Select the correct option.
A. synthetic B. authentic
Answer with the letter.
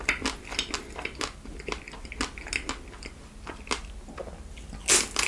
B